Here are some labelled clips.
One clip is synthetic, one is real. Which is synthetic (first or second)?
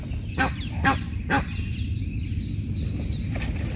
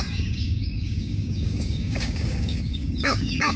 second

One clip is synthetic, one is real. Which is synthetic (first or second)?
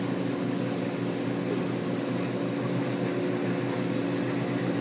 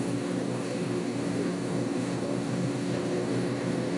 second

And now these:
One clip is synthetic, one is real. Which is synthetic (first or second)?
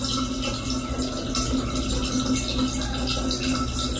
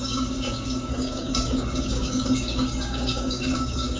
second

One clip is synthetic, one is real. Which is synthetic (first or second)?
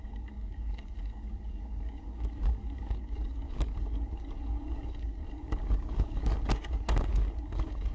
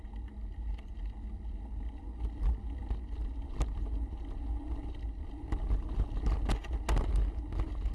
first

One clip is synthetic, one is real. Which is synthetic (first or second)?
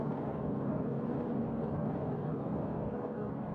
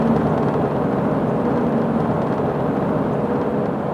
first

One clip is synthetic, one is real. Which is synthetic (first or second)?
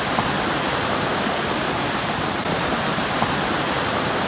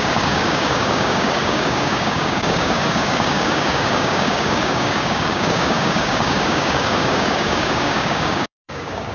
second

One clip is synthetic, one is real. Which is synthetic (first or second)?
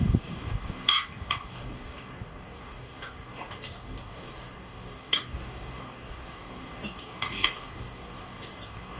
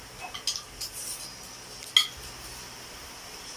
first